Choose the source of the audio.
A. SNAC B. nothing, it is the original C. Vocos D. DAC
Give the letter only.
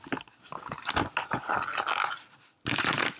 B